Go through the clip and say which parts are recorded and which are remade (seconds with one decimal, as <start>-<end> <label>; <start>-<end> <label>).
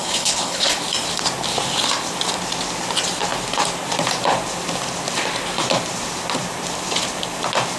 0.0-0.8 remade; 0.8-7.8 recorded